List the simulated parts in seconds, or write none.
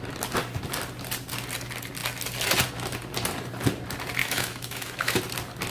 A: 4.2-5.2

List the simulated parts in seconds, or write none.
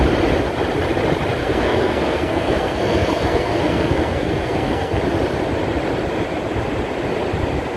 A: 1.4-5.0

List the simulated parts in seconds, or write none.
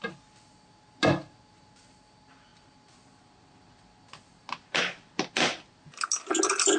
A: none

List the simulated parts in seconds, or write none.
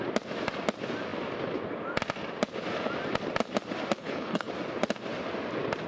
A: 4.0-4.5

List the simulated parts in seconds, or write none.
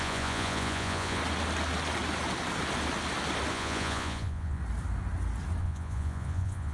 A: 0.0-1.2; 3.5-4.6; 5.6-6.7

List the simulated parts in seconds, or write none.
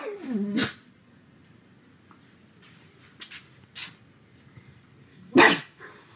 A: 5.1-5.8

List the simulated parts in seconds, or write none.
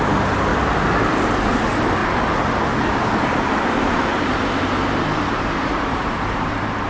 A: 0.0-0.5; 1.3-2.0; 2.8-4.4; 5.0-6.9